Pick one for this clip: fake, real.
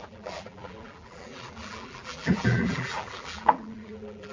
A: fake